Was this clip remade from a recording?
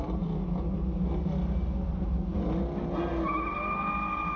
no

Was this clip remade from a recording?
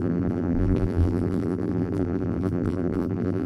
yes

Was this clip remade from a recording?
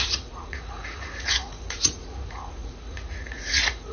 yes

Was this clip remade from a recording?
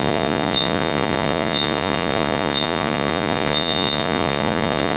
yes